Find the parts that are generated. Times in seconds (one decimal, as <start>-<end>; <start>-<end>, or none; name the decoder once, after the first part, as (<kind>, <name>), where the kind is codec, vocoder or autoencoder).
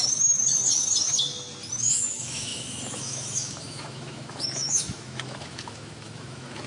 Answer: 0.0-0.4 (autoencoder, DAC-VAE); 1.7-6.7